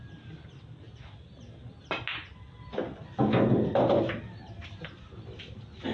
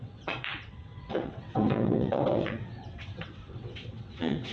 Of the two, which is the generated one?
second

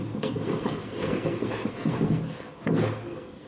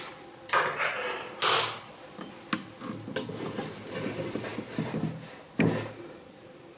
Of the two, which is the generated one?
first